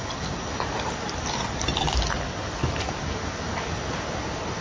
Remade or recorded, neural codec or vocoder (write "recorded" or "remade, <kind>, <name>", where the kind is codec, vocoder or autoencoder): recorded